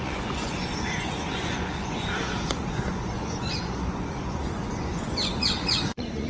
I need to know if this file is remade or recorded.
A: remade